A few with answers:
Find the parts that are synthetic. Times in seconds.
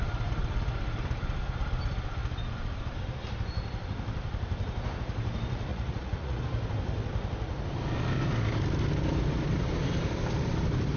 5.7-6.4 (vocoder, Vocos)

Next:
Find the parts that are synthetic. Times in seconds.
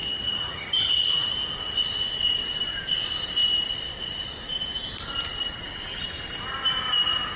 0.0-1.3 (vocoder, HiFi-GAN)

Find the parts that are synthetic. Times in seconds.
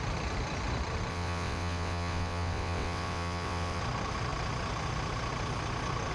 1.1-3.8 (vocoder, WaveNeXt)